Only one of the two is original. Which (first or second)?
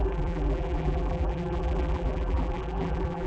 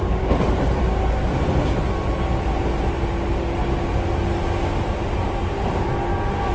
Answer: second